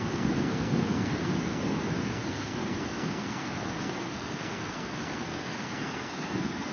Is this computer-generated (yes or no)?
yes